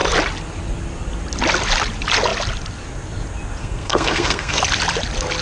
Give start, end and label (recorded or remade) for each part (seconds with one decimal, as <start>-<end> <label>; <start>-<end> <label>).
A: 0.0-3.6 recorded; 3.6-4.6 remade; 4.6-5.4 recorded